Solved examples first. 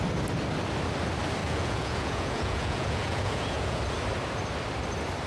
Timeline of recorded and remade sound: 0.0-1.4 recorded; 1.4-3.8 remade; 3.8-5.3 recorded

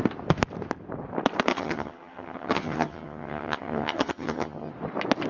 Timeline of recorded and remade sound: 0.0-1.5 recorded; 1.5-4.7 remade; 4.7-5.3 recorded

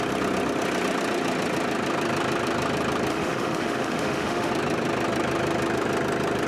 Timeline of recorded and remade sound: 0.0-3.1 recorded; 3.1-4.5 remade; 4.5-6.5 recorded